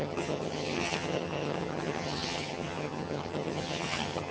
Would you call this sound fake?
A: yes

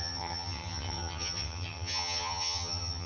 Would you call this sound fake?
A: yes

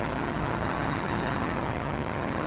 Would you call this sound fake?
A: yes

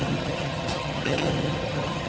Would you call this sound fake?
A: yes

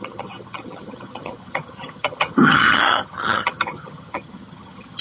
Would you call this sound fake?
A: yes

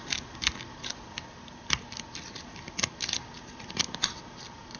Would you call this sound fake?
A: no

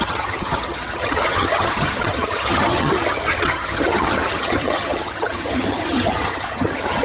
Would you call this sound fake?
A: yes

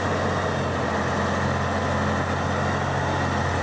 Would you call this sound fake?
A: no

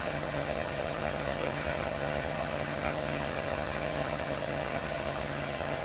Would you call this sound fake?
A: yes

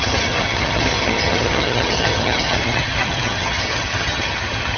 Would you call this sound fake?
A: yes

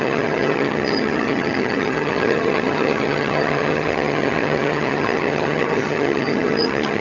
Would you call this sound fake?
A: yes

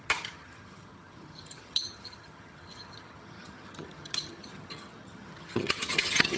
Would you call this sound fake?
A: yes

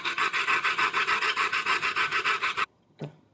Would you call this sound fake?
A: yes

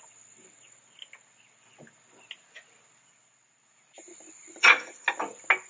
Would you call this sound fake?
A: no